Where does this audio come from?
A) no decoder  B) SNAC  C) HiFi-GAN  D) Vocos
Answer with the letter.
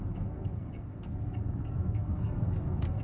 B